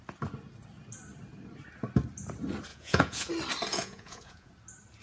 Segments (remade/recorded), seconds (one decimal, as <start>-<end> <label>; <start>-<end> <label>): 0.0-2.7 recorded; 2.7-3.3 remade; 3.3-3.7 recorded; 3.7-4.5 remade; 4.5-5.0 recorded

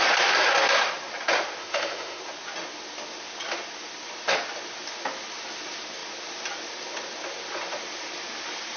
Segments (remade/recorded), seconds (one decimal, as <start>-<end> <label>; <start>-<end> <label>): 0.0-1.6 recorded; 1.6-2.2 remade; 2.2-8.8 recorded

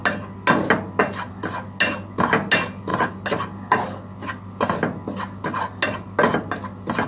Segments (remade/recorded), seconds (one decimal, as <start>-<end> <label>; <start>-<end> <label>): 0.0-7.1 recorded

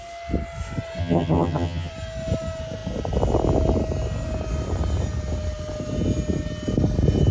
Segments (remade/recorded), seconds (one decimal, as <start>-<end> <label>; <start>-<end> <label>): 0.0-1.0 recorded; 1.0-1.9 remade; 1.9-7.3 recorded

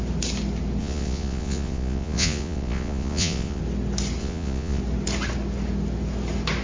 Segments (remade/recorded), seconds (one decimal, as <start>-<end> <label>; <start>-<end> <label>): 0.0-0.8 recorded; 0.8-3.6 remade; 3.6-4.2 recorded; 4.2-4.8 remade; 4.8-6.6 recorded